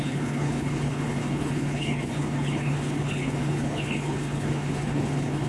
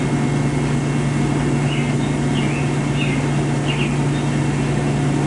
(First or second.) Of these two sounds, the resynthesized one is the first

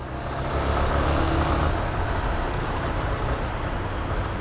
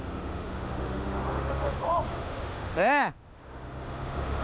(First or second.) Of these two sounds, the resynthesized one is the second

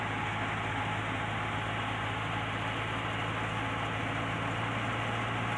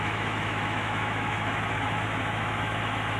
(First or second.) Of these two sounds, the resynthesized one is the second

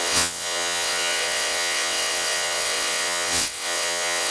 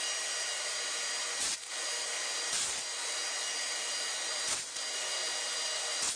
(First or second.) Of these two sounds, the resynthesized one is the first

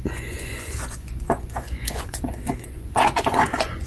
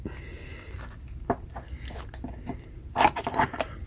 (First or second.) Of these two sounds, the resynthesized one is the first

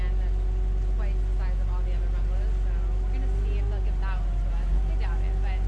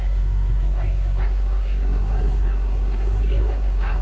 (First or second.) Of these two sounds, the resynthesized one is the second